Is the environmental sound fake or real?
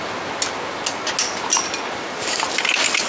real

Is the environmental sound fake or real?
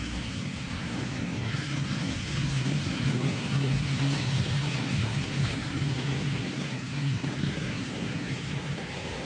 fake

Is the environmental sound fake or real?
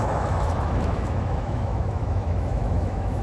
fake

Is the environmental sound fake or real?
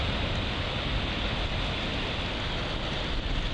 real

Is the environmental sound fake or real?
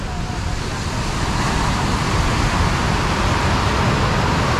real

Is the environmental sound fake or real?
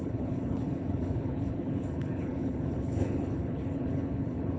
fake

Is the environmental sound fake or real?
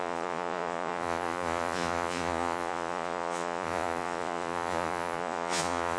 fake